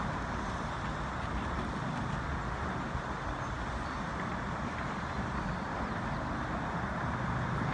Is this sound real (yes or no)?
yes